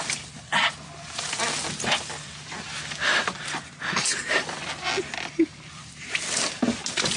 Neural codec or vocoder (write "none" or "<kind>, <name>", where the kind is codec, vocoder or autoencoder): none